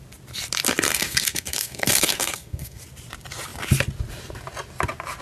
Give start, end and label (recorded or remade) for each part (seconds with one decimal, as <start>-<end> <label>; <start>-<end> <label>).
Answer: 0.0-0.9 recorded; 0.9-2.8 remade; 2.8-5.2 recorded